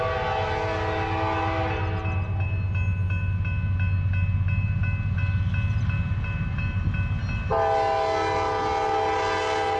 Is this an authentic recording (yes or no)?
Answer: yes